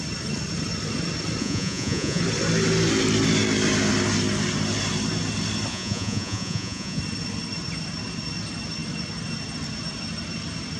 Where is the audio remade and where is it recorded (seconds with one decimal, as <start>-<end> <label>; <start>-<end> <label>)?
0.0-1.4 recorded; 1.4-2.2 remade; 2.2-5.7 recorded; 5.7-7.0 remade; 7.0-10.8 recorded